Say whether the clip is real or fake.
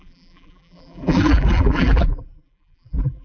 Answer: fake